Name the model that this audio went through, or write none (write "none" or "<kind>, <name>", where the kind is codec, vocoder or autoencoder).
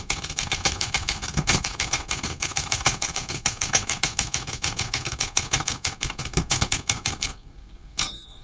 codec, SNAC